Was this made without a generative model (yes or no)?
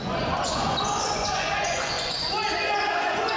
no